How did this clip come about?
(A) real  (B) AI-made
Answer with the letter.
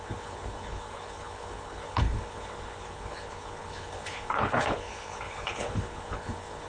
B